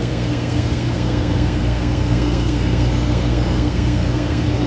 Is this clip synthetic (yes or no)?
yes